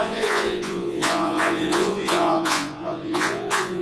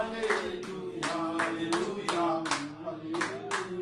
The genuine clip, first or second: second